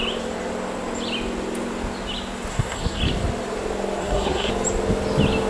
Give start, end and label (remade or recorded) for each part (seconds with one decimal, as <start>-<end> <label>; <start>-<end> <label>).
0.0-2.5 recorded; 2.5-3.0 remade; 3.0-4.0 recorded; 4.0-4.5 remade; 4.5-5.5 recorded